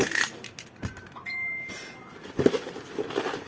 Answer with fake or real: real